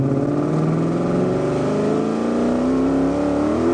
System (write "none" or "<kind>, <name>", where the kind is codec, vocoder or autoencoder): none